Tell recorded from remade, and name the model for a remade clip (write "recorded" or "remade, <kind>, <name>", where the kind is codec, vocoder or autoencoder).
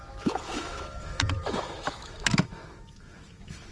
remade, autoencoder, DAC-VAE